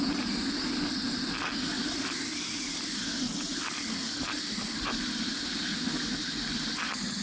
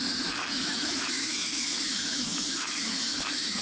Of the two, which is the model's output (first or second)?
second